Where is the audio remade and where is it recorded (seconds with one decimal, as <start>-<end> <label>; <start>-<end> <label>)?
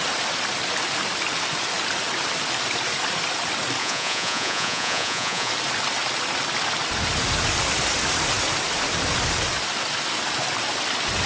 0.0-3.8 recorded; 3.8-5.5 remade; 5.5-11.3 recorded